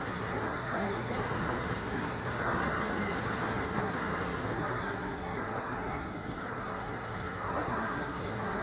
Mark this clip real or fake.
fake